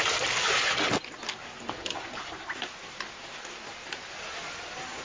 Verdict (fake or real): real